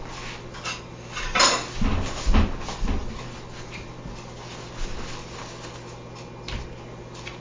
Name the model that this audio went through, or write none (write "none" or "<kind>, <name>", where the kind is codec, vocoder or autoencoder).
none